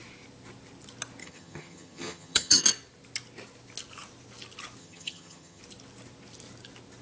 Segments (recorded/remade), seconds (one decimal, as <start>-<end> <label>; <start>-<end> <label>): 0.0-1.2 recorded; 1.2-2.6 remade; 2.6-4.8 recorded; 4.8-5.6 remade; 5.6-7.0 recorded